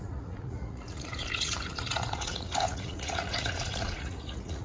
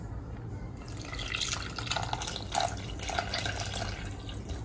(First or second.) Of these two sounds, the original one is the second